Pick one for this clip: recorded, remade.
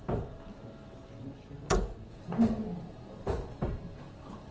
recorded